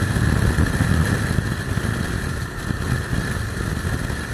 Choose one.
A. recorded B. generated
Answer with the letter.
A